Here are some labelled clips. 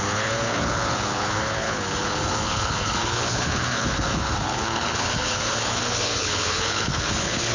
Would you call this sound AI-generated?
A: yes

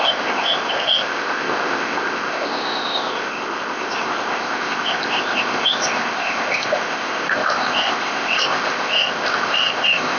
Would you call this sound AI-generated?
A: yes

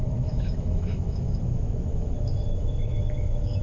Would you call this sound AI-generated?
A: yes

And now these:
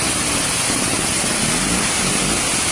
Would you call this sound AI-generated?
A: no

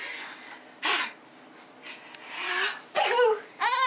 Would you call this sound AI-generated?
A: no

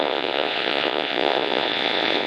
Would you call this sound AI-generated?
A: yes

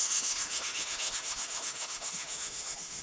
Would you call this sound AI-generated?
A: yes